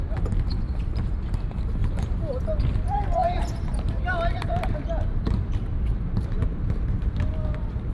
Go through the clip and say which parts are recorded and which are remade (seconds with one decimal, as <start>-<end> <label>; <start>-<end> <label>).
0.0-3.2 recorded; 3.2-7.3 remade; 7.3-7.9 recorded